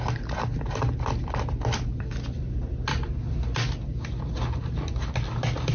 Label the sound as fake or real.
real